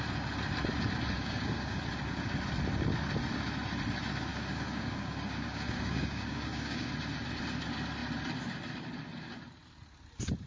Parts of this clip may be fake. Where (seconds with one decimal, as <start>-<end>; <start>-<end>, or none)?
1.2-1.8; 4.3-6.9